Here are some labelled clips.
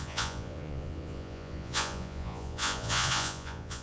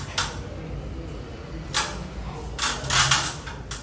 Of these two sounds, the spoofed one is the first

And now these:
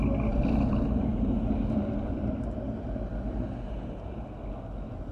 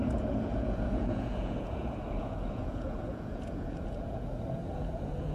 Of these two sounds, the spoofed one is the second